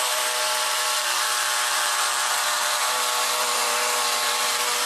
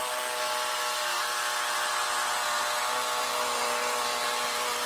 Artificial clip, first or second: first